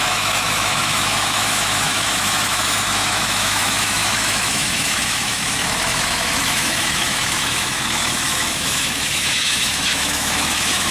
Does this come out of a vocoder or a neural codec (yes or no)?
yes